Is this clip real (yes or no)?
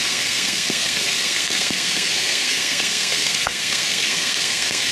no